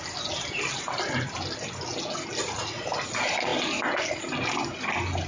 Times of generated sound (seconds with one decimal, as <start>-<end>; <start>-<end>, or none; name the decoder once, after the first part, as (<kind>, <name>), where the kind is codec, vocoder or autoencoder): none